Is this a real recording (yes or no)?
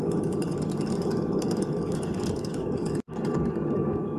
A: no